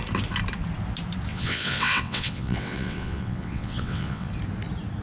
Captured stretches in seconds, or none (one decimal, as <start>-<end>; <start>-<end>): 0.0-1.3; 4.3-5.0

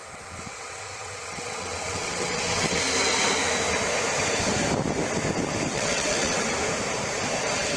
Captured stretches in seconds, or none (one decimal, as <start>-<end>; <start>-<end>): 2.8-5.7; 6.5-7.8

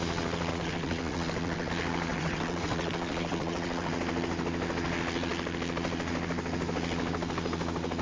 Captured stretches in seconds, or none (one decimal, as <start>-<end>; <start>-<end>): 0.0-0.5; 1.7-2.1; 3.9-8.0

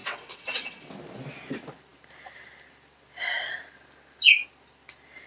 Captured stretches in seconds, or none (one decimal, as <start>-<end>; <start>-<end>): 0.9-5.3

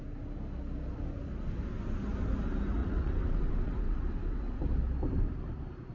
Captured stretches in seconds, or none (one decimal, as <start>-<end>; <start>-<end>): 0.0-2.8; 4.6-5.9

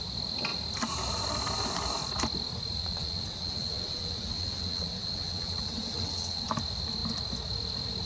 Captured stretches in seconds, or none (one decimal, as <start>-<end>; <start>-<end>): 0.0-2.8; 6.5-8.1

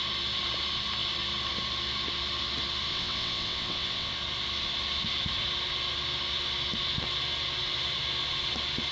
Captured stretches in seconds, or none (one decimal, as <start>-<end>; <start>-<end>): 0.0-2.9; 4.1-8.9

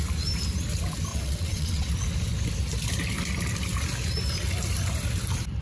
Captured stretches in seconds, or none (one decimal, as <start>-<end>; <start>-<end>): 0.0-1.1; 1.9-5.6